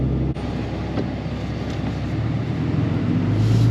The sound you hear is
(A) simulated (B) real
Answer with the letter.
B